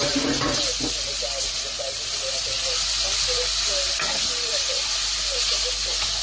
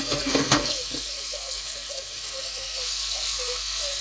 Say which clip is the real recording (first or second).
first